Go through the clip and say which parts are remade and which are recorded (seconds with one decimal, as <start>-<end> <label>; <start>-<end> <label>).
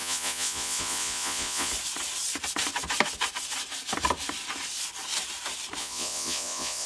0.0-1.7 remade; 1.7-5.8 recorded; 5.8-6.9 remade